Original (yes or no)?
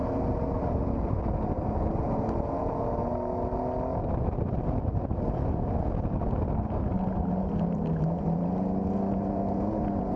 yes